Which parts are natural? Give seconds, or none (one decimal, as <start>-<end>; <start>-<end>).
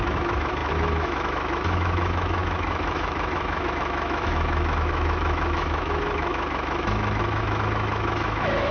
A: none